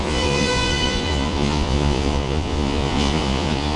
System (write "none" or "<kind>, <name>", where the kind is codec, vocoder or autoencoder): vocoder, Vocos